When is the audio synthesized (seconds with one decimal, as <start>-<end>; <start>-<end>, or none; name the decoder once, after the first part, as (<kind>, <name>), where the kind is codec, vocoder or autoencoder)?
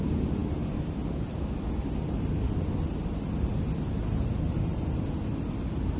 none